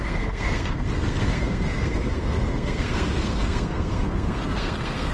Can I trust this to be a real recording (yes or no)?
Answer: no